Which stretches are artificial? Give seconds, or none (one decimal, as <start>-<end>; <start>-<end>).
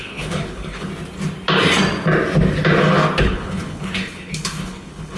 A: 0.0-0.9; 3.2-5.2